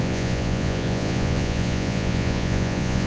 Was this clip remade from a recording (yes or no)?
yes